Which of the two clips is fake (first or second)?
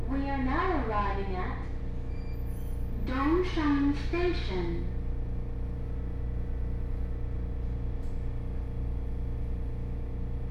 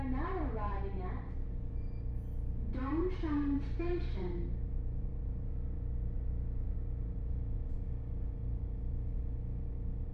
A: second